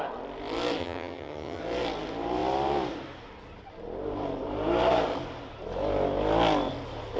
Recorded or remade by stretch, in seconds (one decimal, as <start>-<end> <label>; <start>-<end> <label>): 0.0-0.8 recorded; 0.8-1.6 remade; 1.6-7.2 recorded